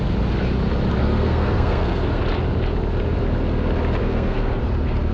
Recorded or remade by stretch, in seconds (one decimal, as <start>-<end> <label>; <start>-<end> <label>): 0.0-1.0 recorded; 1.0-2.2 remade; 2.2-4.0 recorded; 4.0-4.6 remade; 4.6-5.1 recorded